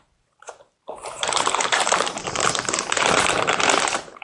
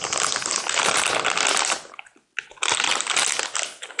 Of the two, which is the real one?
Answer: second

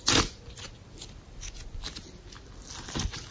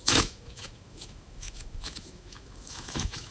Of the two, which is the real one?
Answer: first